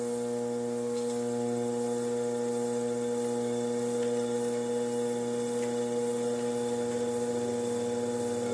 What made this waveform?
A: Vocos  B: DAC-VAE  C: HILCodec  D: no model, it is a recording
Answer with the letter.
D